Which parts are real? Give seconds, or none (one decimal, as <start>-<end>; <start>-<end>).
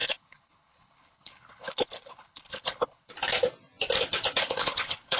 3.1-4.4